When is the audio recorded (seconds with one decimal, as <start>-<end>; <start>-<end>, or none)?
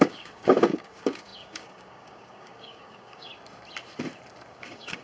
3.3-4.5